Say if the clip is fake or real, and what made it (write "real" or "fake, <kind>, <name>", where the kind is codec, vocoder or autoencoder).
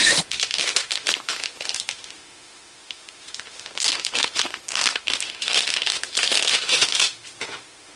fake, autoencoder, DAC-VAE